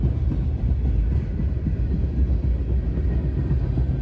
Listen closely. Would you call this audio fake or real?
real